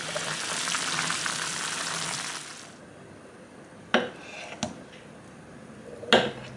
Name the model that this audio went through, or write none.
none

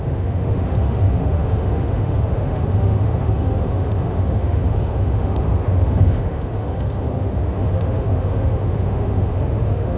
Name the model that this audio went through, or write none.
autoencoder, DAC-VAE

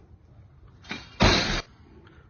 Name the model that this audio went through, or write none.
none